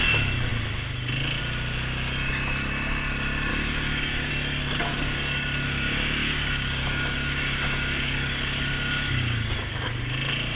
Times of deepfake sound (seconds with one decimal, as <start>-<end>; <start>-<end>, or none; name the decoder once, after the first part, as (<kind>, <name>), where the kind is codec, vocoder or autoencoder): 3.5-4.3 (codec, DAC); 4.9-9.9